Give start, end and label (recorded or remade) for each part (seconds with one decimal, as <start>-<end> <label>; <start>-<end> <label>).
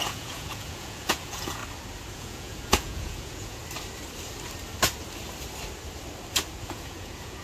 0.0-1.6 remade; 1.6-2.1 recorded; 2.1-3.6 remade; 3.6-6.6 recorded; 6.6-7.4 remade